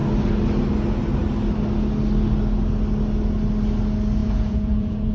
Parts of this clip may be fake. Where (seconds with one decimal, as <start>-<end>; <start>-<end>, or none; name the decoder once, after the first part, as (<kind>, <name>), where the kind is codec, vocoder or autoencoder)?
4.2-5.1 (vocoder, Vocos)